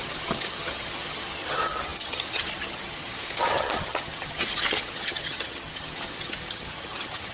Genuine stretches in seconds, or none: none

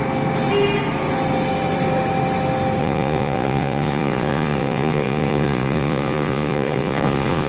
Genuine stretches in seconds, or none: 0.0-2.8

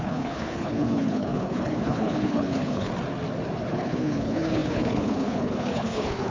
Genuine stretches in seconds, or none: 2.9-3.7

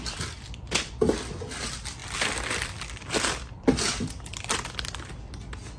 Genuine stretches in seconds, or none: 0.0-5.8

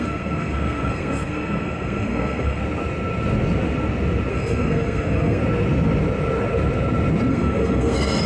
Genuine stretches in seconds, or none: 2.6-4.3; 5.4-7.3

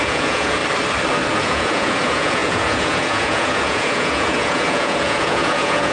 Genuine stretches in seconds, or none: 0.6-1.4

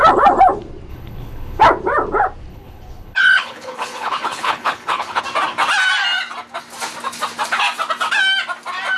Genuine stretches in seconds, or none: 0.0-0.9; 1.6-2.5; 5.2-9.0

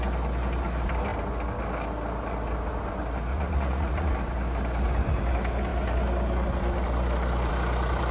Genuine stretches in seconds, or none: 0.0-3.3; 4.1-8.1